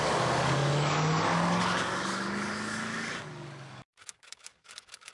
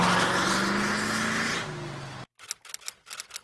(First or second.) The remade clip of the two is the first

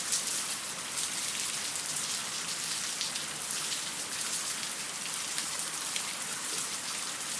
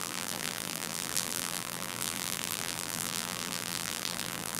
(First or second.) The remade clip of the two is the second